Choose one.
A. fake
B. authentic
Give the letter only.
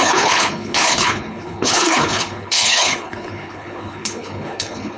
A